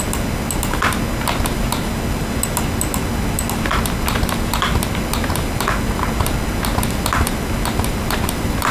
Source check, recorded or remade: recorded